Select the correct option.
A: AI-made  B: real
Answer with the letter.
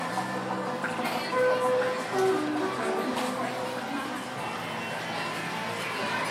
B